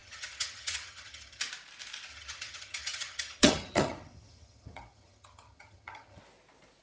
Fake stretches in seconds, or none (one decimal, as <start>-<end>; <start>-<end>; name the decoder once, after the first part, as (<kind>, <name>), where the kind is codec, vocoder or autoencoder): 0.0-1.4 (vocoder, HiFi-GAN); 2.1-6.2